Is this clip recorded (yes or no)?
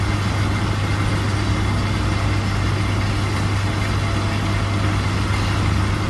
yes